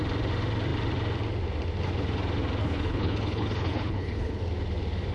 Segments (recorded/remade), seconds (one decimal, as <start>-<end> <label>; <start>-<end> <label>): 0.0-2.6 recorded; 2.6-4.4 remade; 4.4-5.1 recorded